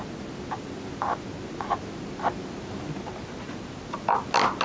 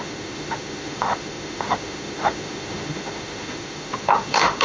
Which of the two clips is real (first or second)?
first